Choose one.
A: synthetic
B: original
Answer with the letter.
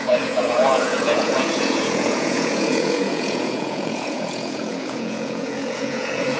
A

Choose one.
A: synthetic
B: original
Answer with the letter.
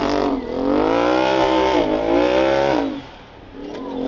B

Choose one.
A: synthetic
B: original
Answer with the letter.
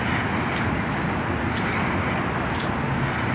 B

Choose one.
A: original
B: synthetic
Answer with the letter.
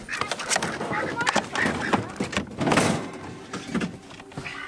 A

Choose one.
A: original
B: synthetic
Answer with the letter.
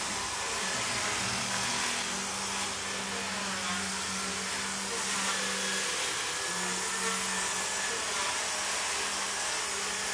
A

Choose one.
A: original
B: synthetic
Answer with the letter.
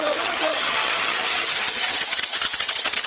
B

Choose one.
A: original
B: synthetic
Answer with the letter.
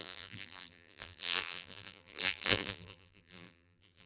B